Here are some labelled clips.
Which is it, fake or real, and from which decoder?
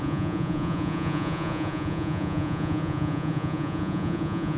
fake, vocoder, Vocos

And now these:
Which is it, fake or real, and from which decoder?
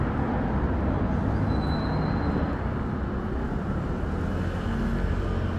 real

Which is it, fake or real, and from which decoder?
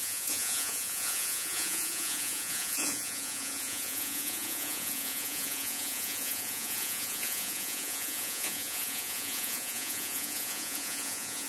fake, vocoder, Vocos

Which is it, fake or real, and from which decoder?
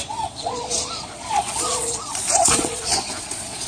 fake, vocoder, Vocos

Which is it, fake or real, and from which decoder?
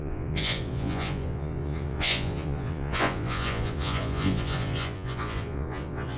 fake, vocoder, Vocos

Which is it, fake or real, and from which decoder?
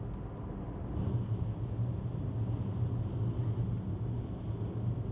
real